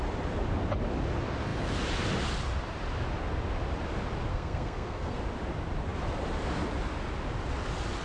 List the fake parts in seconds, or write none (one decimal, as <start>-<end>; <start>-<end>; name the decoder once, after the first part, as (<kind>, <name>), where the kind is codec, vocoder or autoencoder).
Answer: 4.3-5.2 (codec, SNAC)